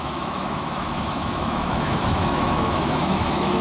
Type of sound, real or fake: fake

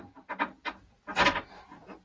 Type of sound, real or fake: real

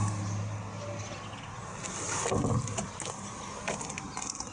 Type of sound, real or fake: real